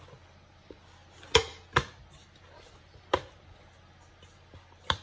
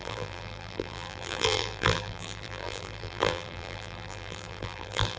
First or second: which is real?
first